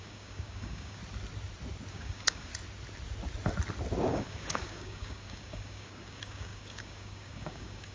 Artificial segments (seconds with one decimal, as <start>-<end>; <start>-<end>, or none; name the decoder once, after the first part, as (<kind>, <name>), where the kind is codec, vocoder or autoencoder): 0.0-1.0 (codec, DAC); 1.9-2.5; 4.1-7.9